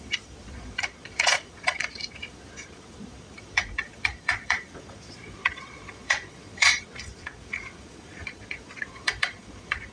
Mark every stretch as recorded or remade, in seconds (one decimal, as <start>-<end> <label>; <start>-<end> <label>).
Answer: 0.0-9.9 remade